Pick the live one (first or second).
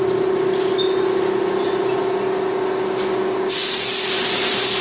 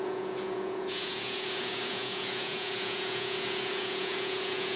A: first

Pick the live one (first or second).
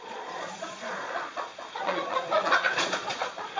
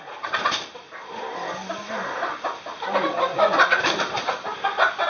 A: second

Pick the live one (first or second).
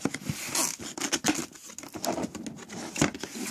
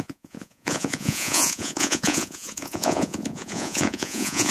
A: first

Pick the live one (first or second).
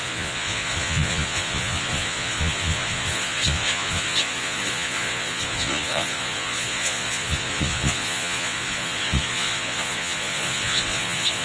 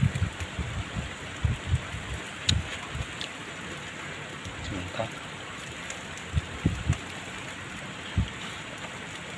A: second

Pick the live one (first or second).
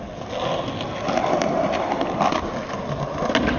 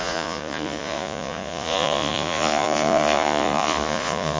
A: first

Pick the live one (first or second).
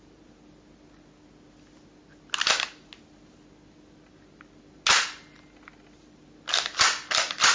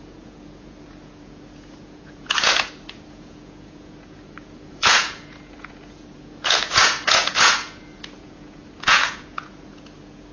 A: first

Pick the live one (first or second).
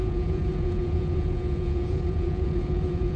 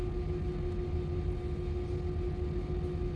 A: second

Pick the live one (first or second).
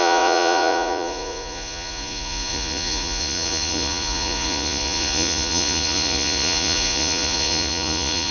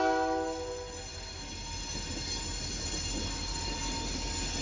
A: second